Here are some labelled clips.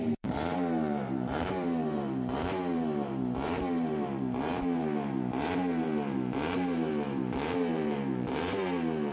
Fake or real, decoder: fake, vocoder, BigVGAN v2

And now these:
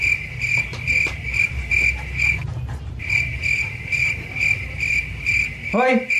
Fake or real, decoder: real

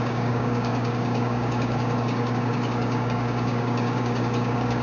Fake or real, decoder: fake, codec, DAC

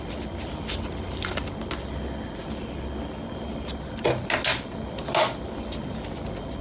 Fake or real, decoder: real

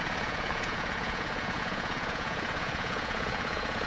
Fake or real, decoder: fake, vocoder, Vocos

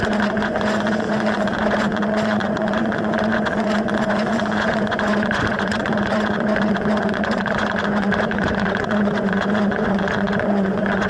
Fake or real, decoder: fake, vocoder, Vocos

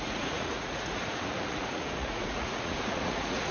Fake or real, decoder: fake, vocoder, Vocos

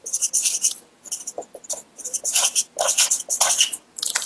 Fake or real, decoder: real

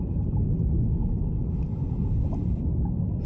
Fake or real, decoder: real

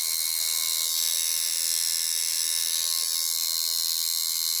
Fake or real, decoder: real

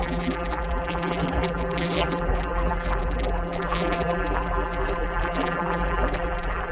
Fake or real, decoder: fake, vocoder, BigVGAN v2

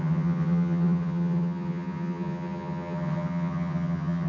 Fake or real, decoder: fake, vocoder, HiFi-GAN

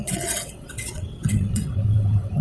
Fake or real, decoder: fake, vocoder, WaveNeXt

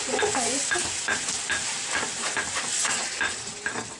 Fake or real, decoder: real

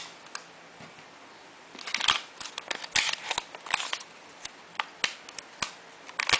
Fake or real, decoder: real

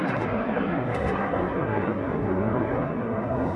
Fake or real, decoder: fake, codec, SNAC